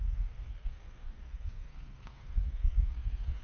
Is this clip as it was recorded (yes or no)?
no